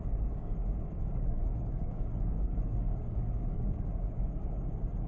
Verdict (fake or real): fake